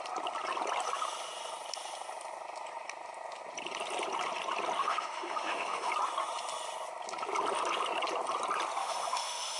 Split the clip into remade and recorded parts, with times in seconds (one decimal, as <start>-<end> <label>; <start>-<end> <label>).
0.0-4.8 recorded; 4.8-5.9 remade; 5.9-8.8 recorded; 8.8-9.6 remade